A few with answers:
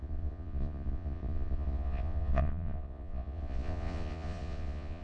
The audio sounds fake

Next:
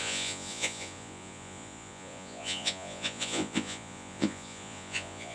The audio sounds fake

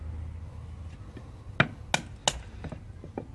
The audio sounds real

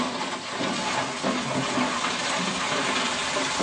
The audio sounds real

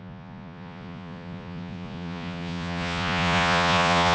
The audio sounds fake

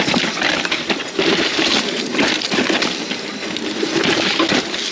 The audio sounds real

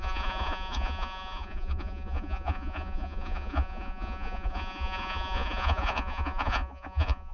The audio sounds fake